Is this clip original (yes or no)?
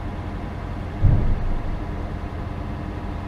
yes